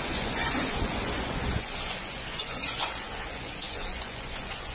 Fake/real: fake